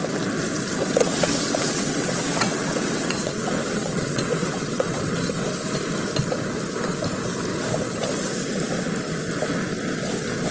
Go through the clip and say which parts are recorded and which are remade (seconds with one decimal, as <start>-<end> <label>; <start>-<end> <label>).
0.0-0.8 recorded; 0.8-5.0 remade; 5.0-10.5 recorded